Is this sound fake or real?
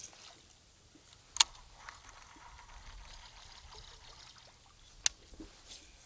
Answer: real